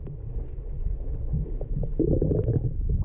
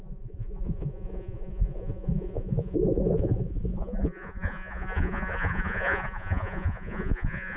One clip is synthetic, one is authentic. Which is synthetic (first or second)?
second